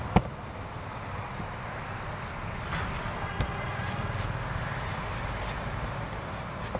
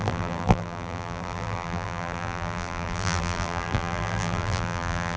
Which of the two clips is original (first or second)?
first